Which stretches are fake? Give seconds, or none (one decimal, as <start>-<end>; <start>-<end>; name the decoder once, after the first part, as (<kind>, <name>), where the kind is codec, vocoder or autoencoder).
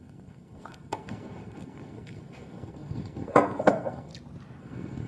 0.0-4.1 (codec, SNAC); 4.6-5.1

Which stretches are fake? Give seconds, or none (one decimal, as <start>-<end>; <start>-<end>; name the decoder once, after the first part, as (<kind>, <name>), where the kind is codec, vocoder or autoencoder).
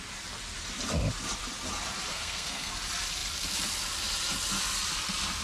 2.1-2.7 (codec, SNAC)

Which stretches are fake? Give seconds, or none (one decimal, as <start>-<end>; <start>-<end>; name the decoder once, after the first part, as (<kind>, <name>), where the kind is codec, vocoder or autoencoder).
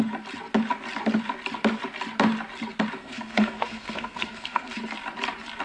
3.0-4.8 (codec, SNAC)